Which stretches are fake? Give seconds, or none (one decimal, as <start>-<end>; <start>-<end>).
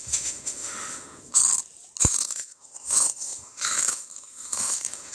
0.0-1.4; 2.0-5.1